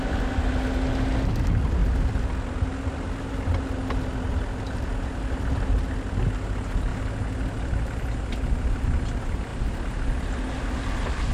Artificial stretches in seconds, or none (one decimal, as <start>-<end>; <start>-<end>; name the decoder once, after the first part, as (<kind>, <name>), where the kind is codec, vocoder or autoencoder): none